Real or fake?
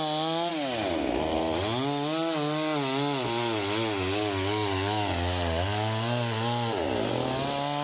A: real